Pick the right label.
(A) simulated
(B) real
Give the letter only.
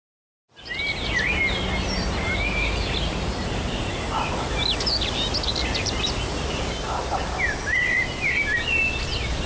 B